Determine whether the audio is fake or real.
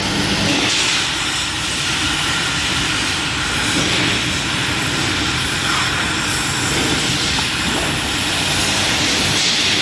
real